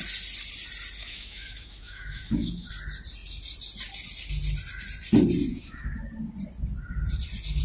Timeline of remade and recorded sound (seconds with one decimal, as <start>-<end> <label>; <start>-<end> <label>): 0.0-1.0 recorded; 1.0-2.7 remade; 2.7-5.5 recorded; 5.5-6.1 remade; 6.1-7.6 recorded